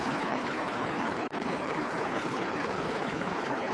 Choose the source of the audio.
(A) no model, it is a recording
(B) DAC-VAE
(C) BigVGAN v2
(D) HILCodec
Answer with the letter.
D